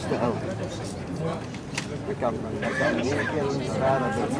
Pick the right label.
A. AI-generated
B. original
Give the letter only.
A